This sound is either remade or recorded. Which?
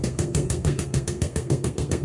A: remade